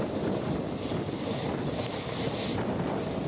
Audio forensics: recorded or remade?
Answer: recorded